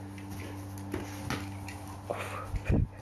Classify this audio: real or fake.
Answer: real